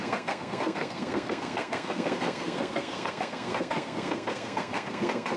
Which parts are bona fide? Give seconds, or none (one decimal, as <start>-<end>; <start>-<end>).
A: none